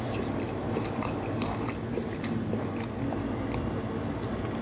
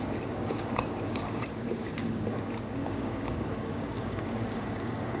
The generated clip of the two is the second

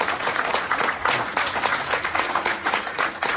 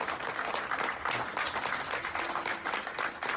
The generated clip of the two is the first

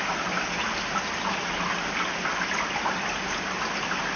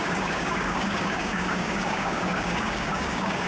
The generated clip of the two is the second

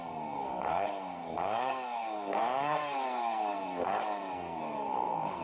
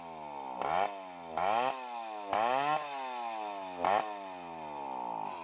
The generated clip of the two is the first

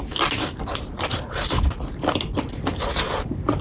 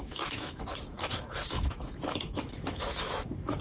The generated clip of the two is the second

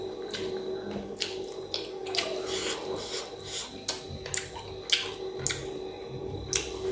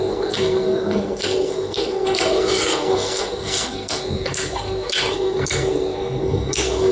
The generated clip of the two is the second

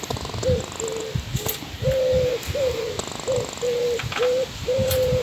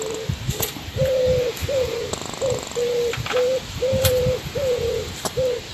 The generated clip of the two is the second